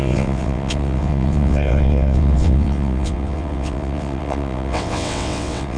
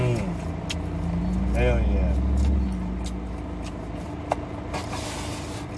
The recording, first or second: second